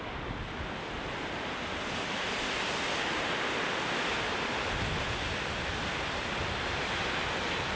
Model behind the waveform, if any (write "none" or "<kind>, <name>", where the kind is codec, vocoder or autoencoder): none